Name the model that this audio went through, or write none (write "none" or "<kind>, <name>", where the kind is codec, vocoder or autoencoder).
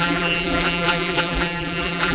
vocoder, BigVGAN v2